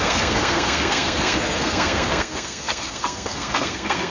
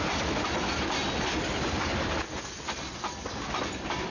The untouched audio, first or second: second